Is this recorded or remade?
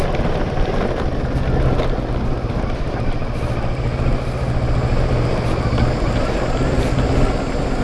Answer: recorded